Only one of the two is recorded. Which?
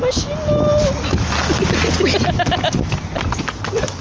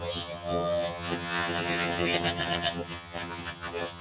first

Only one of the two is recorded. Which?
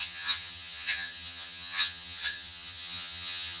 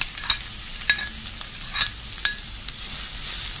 second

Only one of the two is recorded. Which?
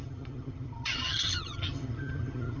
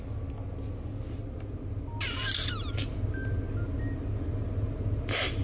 second